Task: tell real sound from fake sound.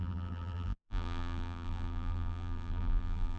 fake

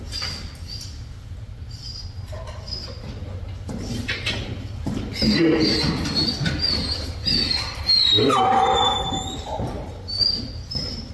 fake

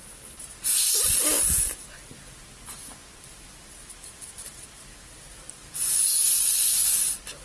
real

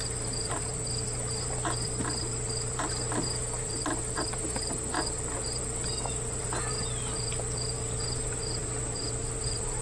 fake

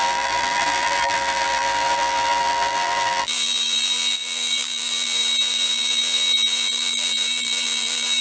fake